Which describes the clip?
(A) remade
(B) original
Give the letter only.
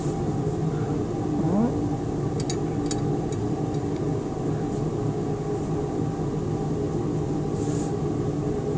B